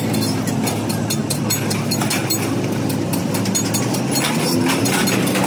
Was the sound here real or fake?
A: real